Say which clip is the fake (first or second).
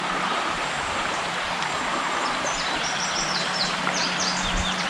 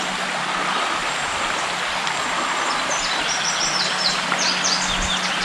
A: first